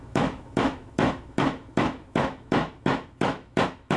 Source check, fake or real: fake